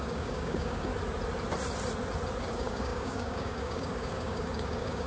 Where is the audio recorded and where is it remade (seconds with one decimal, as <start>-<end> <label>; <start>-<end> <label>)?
0.0-0.9 remade; 0.9-2.4 recorded; 2.4-5.1 remade